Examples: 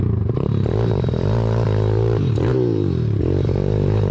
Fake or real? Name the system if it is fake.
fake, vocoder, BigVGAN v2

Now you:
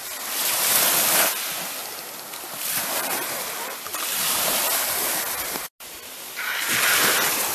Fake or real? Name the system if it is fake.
real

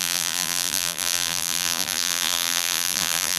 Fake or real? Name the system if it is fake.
fake, vocoder, BigVGAN v2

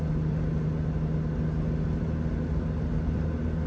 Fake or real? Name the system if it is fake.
real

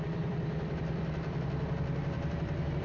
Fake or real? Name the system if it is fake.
fake, vocoder, BigVGAN v2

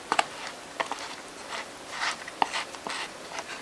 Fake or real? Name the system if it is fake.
real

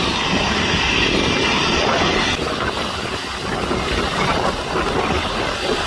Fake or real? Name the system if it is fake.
real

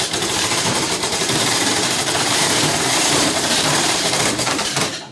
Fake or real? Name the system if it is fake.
fake, vocoder, BigVGAN v2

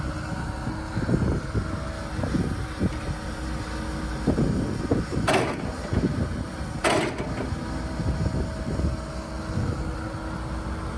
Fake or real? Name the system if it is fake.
real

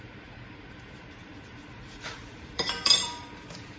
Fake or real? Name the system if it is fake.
fake, vocoder, BigVGAN v2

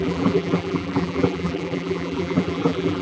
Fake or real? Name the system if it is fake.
fake, vocoder, BigVGAN v2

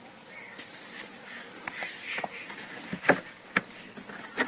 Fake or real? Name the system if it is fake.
real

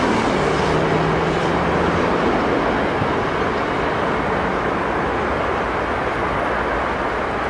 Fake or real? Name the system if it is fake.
real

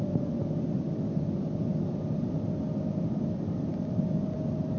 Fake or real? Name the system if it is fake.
fake, vocoder, BigVGAN v2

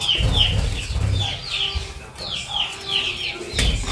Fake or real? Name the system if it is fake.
real